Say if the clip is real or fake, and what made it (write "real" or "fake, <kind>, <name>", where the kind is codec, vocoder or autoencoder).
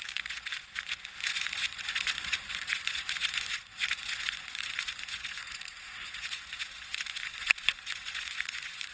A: fake, vocoder, Vocos